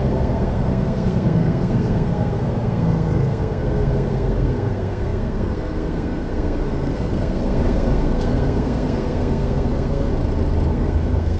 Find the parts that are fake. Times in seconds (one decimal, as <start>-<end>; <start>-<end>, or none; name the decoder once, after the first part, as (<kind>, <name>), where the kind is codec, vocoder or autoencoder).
0.0-10.1 (codec, SNAC); 10.7-11.4